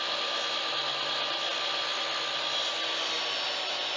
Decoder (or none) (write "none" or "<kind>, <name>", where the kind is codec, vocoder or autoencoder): none